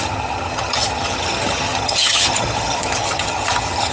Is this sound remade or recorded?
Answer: remade